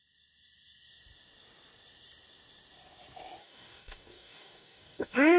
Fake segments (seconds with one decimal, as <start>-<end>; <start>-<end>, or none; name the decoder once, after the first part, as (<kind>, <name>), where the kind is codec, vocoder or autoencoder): 3.4-5.4 (codec, DAC)

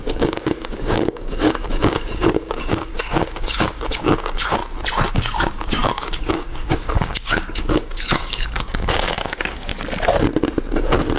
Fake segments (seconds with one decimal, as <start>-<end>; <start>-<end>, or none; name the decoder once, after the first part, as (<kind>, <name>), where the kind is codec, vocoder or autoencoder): 0.0-4.6 (codec, DAC); 5.1-9.7